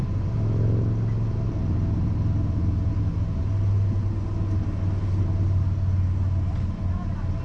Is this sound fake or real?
real